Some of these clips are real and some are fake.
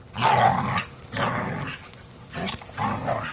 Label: real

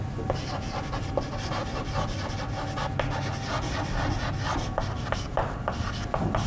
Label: real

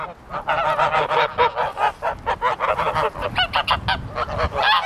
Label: real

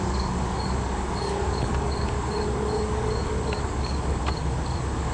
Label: fake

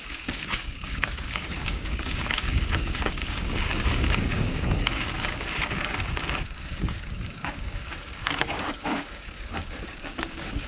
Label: fake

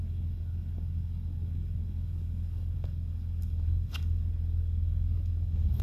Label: fake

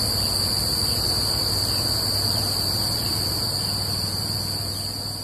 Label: real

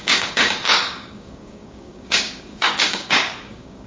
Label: fake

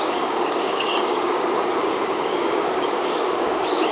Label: fake